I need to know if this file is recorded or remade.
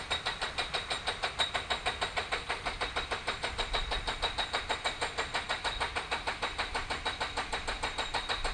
recorded